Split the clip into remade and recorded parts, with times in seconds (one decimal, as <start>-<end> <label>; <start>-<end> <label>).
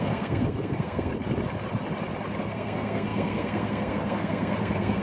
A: 0.0-1.1 remade; 1.1-2.4 recorded; 2.4-5.0 remade